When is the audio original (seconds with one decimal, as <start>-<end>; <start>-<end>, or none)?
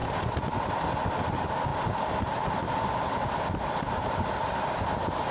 0.0-5.3